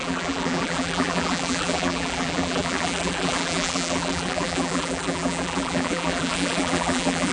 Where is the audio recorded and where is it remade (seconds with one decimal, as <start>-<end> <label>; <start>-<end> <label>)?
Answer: 0.0-7.3 remade